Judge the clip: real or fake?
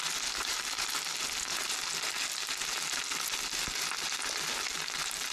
real